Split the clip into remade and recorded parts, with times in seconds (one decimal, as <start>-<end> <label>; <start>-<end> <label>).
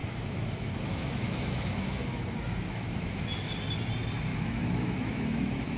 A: 0.0-3.5 remade; 3.5-4.3 recorded; 4.3-5.8 remade